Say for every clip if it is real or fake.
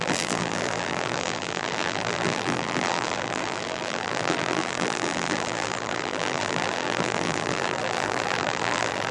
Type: fake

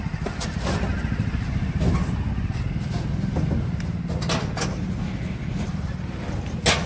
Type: real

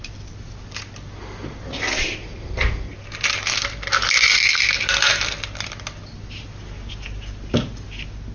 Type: real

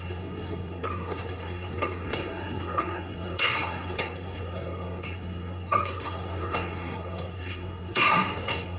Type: fake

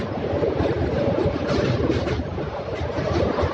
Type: fake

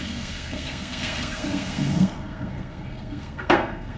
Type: fake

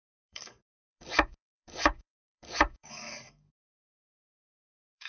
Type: fake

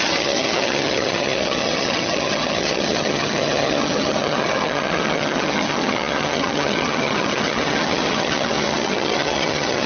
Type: fake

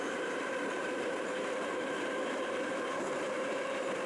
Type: fake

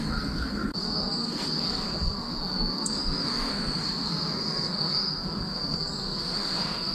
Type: fake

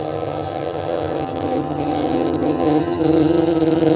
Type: fake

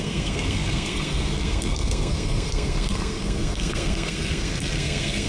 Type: fake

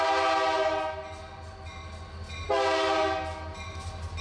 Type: real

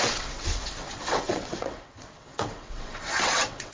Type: fake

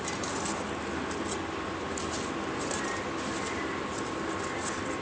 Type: real